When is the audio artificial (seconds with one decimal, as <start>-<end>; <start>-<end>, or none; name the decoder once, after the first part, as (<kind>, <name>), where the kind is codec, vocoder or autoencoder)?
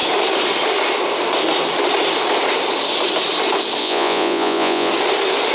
3.8-4.9 (vocoder, Vocos)